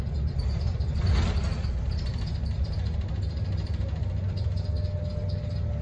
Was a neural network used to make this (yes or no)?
no